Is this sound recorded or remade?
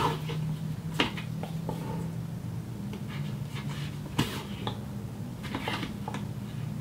recorded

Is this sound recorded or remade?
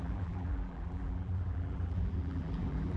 remade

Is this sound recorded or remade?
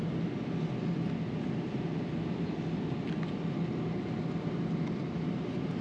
recorded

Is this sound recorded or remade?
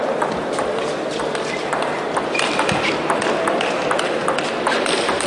recorded